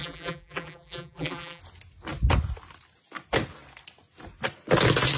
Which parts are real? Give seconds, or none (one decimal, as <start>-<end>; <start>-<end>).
1.6-5.2